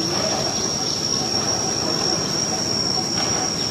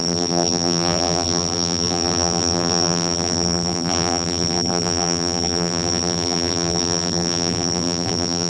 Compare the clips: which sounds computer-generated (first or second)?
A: second